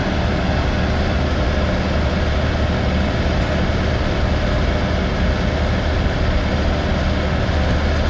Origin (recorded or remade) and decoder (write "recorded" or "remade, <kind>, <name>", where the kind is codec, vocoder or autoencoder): recorded